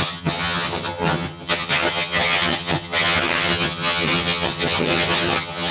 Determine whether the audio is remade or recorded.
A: remade